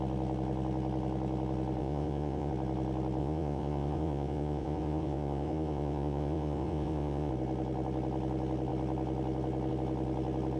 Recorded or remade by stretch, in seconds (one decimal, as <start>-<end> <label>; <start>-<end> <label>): 0.0-1.8 recorded; 1.8-2.5 remade; 2.5-3.2 recorded; 3.2-7.3 remade; 7.3-10.6 recorded